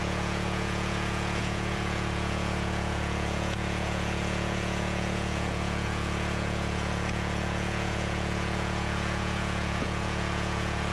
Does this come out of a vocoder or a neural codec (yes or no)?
yes